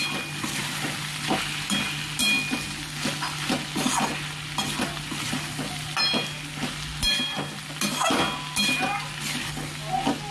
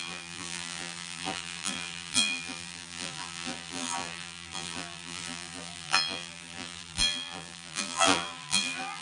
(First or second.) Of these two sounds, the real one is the first